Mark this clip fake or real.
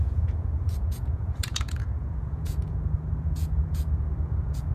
fake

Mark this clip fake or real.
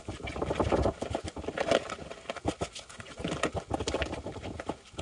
real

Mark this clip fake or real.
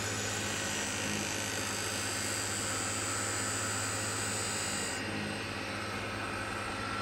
real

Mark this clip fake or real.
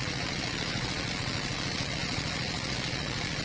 fake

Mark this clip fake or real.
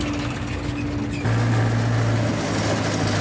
real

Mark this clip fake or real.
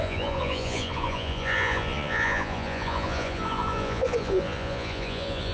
fake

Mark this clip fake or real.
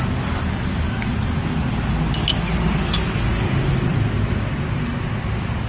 real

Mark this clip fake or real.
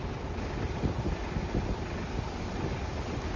real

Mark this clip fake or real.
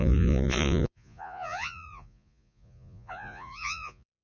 fake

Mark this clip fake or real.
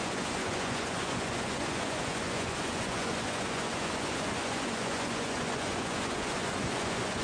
fake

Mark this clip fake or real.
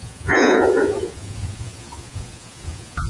fake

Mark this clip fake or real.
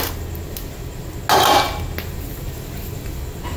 real